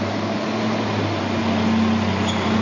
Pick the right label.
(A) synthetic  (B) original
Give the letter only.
B